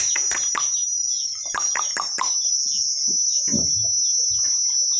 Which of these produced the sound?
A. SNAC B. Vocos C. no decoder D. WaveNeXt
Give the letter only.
C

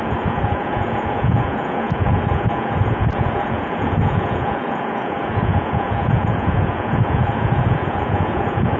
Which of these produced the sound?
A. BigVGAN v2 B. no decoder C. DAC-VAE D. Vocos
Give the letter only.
D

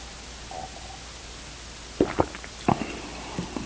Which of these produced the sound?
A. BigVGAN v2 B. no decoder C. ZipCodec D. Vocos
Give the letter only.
B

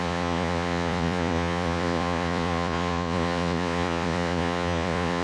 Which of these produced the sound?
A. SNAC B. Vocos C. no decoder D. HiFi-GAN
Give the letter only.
B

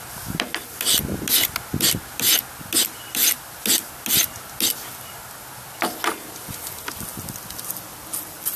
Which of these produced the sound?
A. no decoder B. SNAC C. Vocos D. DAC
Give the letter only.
A